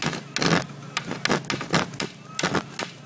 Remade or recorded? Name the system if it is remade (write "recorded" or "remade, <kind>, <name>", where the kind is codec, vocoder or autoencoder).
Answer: recorded